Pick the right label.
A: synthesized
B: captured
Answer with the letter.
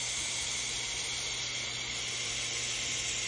A